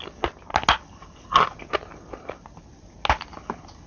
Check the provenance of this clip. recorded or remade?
recorded